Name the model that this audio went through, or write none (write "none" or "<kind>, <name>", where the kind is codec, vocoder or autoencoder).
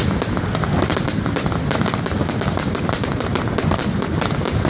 vocoder, BigVGAN v2